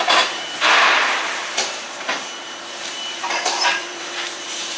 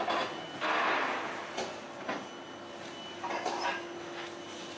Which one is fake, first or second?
first